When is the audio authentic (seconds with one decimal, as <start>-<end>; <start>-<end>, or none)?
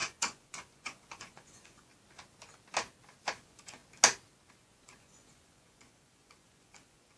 1.9-3.3; 3.8-4.5